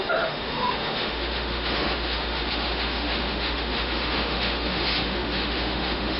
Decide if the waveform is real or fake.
fake